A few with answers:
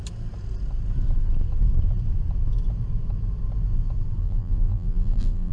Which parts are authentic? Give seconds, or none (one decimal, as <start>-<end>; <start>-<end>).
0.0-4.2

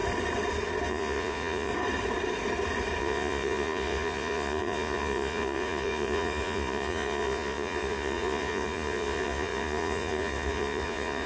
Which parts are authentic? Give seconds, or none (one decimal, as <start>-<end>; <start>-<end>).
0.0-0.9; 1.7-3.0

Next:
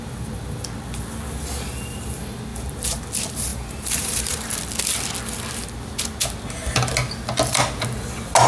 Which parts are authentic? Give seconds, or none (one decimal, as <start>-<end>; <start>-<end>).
0.0-2.5; 3.0-3.5; 4.5-8.5

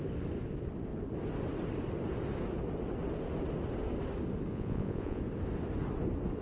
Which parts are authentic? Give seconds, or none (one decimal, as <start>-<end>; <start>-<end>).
0.0-4.5; 5.2-6.4